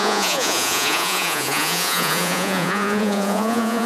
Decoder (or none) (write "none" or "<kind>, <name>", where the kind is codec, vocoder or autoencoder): vocoder, Vocos